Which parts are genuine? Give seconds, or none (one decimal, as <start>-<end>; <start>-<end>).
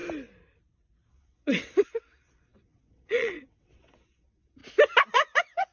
0.0-1.1; 4.6-5.1